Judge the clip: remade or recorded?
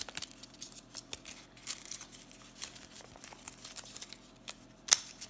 recorded